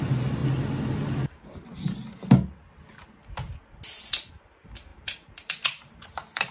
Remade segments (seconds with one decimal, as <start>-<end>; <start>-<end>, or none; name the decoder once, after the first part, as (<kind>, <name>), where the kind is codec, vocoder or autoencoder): 0.0-0.4 (vocoder, BigVGAN v2); 4.3-6.5